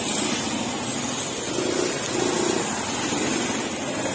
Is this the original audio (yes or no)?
yes